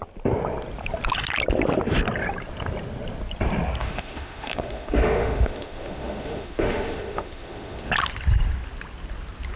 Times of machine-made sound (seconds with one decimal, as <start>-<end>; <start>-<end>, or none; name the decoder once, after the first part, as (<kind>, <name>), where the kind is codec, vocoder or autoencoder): 3.8-7.9 (autoencoder, DAC-VAE)